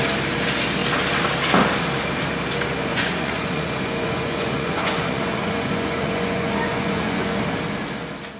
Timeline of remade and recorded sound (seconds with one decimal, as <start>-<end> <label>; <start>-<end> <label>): 0.0-2.9 recorded; 2.9-7.3 remade; 7.3-8.4 recorded